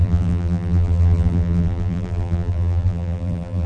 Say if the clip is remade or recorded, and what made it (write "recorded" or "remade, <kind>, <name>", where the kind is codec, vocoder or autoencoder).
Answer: remade, vocoder, BigVGAN v2